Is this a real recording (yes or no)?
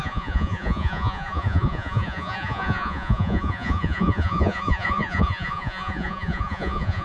no